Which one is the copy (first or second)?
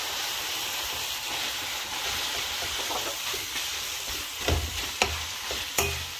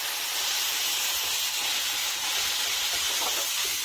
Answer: first